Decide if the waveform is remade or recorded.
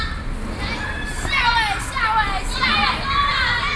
recorded